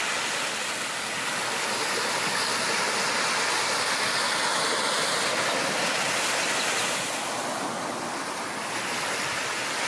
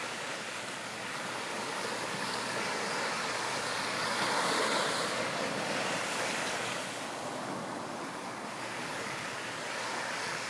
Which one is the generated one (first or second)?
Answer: second